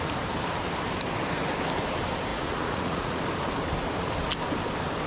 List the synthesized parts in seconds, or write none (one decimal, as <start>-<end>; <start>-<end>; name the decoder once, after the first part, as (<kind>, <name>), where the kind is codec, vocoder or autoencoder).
2.3-3.2 (vocoder, Vocos)